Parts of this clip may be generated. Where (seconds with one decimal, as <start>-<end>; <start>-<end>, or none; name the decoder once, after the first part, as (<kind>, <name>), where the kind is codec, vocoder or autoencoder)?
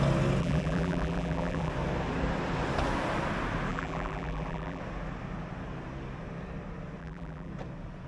0.4-1.7 (vocoder, BigVGAN v2); 3.7-4.8; 7.0-7.5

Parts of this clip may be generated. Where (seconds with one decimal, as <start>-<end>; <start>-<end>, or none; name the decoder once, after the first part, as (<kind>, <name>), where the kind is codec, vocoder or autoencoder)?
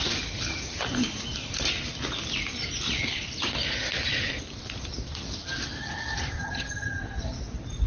6.4-7.0 (vocoder, HiFi-GAN)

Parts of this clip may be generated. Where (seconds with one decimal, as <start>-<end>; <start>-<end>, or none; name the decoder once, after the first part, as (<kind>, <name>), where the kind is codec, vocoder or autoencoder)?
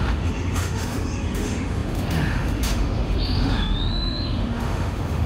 0.0-5.3 (autoencoder, DAC-VAE)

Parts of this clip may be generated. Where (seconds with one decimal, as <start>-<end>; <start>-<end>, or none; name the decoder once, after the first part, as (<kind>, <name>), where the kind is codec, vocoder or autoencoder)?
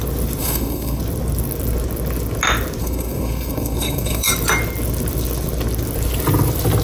0.4-1.0 (codec, SNAC); 2.8-4.3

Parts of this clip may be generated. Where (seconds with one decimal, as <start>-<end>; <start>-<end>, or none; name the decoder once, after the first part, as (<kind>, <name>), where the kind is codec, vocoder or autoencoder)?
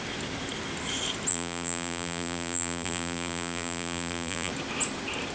1.3-4.5 (vocoder, BigVGAN v2)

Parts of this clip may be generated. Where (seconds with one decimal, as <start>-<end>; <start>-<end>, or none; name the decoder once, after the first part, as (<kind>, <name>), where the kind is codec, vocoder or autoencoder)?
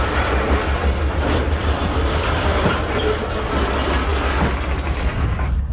0.6-2.8 (vocoder, BigVGAN v2); 4.1-5.0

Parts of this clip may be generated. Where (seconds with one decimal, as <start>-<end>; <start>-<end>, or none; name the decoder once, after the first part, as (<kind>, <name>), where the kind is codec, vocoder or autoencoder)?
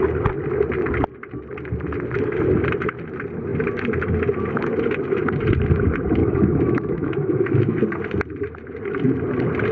6.2-7.8 (autoencoder, DAC-VAE)